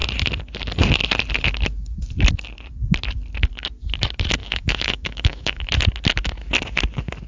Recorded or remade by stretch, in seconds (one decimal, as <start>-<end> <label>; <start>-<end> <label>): 0.0-4.4 recorded; 4.4-5.7 remade; 5.7-7.3 recorded